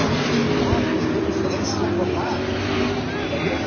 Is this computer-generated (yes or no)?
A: no